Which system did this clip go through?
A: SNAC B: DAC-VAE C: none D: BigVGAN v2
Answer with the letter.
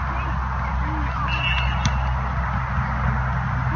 C